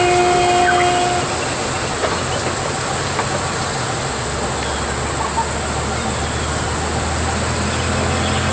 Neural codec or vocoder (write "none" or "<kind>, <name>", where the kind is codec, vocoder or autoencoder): none